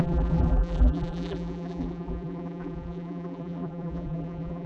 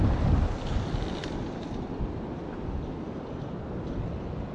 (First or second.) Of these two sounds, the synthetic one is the first